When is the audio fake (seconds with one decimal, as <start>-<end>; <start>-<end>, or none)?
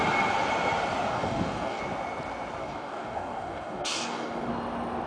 1.1-1.8; 2.6-4.5